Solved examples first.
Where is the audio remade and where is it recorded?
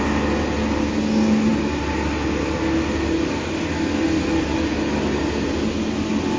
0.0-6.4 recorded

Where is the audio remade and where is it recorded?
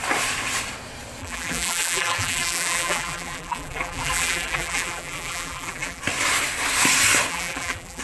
0.0-1.2 recorded; 1.2-6.0 remade; 6.0-7.3 recorded; 7.3-8.0 remade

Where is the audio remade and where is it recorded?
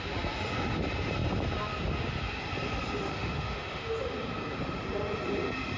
0.0-3.0 recorded; 3.0-3.8 remade; 3.8-5.8 recorded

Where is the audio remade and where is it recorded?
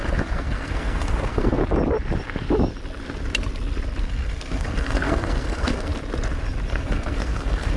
0.0-1.6 remade; 1.6-4.0 recorded; 4.0-5.9 remade; 5.9-6.7 recorded; 6.7-7.8 remade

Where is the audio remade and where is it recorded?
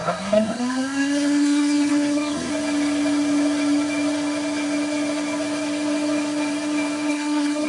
0.0-2.5 remade; 2.5-7.1 recorded; 7.1-7.7 remade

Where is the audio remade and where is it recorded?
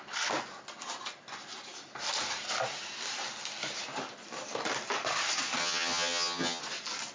0.0-5.6 recorded; 5.6-6.6 remade; 6.6-7.1 recorded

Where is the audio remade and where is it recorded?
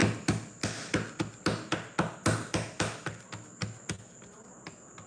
0.0-5.1 recorded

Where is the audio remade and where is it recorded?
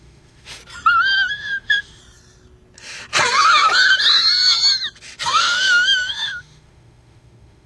0.0-0.6 remade; 0.6-1.3 recorded; 1.3-2.0 remade; 2.0-5.4 recorded; 5.4-7.7 remade